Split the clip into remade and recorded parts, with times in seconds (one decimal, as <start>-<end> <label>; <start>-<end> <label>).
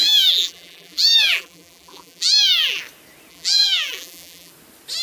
0.0-2.8 remade; 2.8-3.3 recorded; 3.3-4.5 remade; 4.5-5.0 recorded